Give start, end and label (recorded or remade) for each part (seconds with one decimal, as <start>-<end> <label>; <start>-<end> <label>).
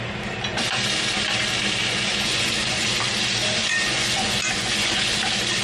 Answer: 0.0-1.8 recorded; 1.8-3.0 remade; 3.0-3.4 recorded; 3.4-5.1 remade; 5.1-5.6 recorded